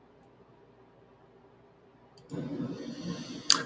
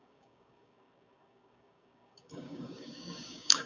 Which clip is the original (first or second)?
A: first